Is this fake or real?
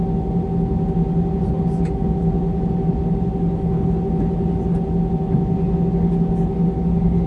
real